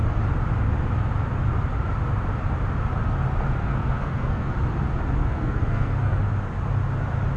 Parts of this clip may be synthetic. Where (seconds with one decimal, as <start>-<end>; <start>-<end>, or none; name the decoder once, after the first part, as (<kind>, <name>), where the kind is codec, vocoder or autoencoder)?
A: 3.6-4.5 (codec, SNAC); 5.2-6.2